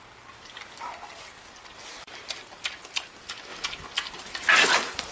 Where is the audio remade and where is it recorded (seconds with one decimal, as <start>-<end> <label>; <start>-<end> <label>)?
0.0-5.1 recorded